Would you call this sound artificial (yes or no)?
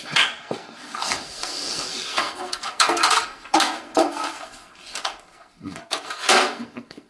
yes